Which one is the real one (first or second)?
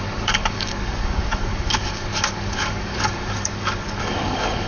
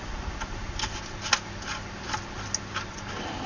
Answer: second